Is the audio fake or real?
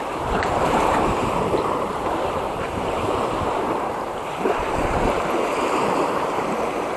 fake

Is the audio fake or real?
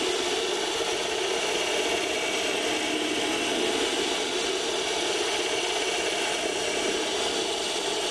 real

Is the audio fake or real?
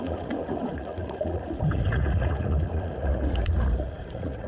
fake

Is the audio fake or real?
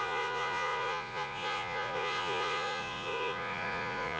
fake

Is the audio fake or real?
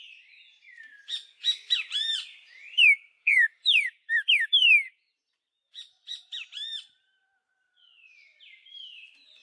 fake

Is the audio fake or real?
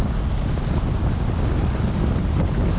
real